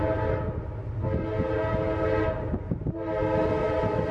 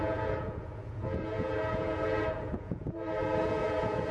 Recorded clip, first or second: first